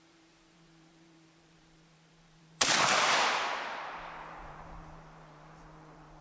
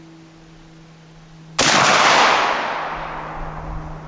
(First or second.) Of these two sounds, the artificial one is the first